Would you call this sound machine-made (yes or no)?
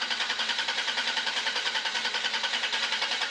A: yes